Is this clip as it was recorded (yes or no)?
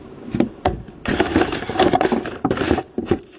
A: no